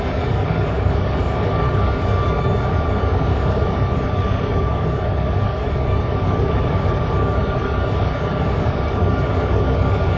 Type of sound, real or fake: fake